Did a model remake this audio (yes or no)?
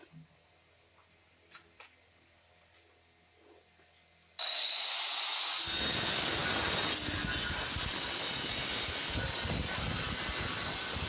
no